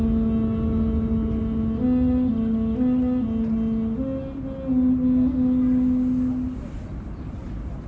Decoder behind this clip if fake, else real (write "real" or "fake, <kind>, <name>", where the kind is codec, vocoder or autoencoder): real